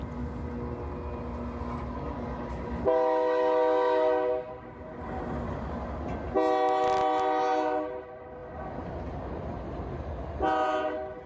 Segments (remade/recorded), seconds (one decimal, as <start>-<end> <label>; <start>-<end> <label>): 0.0-11.3 recorded